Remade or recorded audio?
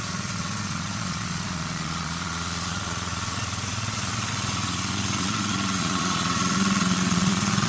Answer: remade